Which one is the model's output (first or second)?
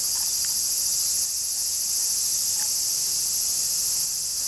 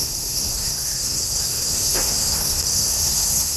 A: second